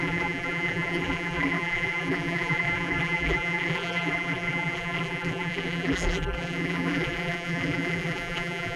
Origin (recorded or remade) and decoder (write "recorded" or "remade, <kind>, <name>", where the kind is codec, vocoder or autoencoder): remade, vocoder, BigVGAN v2